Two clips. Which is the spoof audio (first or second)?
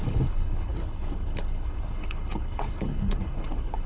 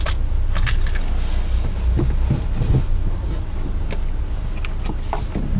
first